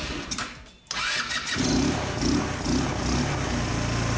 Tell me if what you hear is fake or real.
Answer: real